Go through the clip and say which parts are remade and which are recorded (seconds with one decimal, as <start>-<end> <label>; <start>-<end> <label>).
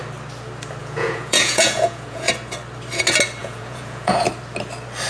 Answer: 0.0-0.8 recorded; 0.8-2.3 remade; 2.3-3.4 recorded; 3.4-4.3 remade; 4.3-5.1 recorded